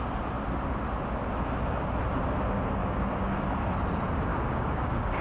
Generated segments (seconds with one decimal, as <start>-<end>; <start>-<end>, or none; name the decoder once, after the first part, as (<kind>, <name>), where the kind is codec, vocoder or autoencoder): 2.8-3.4 (codec, DAC); 4.3-5.2